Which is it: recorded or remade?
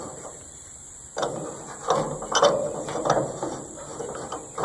recorded